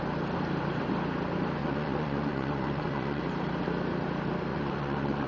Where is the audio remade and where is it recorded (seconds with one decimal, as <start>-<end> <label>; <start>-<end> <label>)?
0.0-1.6 recorded; 1.6-3.2 remade; 3.2-4.5 recorded; 4.5-5.3 remade

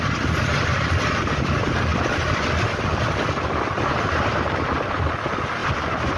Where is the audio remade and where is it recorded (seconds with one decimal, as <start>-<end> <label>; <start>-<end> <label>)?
0.0-6.2 recorded

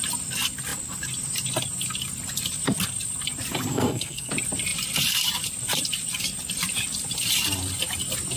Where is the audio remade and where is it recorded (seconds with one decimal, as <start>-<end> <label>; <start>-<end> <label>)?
0.0-3.7 recorded; 3.7-4.3 remade; 4.3-8.4 recorded

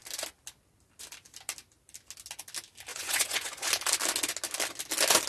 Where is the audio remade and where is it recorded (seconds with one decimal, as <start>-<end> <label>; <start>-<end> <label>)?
0.0-2.9 recorded; 2.9-3.7 remade; 3.7-5.3 recorded

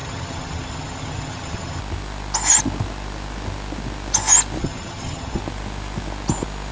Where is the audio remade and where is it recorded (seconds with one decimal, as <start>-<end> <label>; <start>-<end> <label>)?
0.0-1.8 remade; 1.8-4.6 recorded; 4.6-5.4 remade; 5.4-6.7 recorded

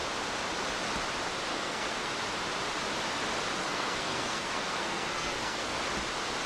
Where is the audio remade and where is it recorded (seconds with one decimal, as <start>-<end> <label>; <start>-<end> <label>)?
0.0-1.5 recorded; 1.5-2.1 remade; 2.1-3.6 recorded; 3.6-5.8 remade; 5.8-6.5 recorded